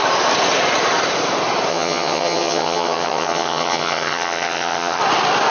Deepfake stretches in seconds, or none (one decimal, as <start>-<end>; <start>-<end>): 1.7-5.0